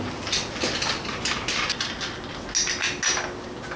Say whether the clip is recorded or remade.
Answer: recorded